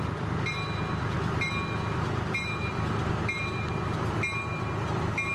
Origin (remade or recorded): recorded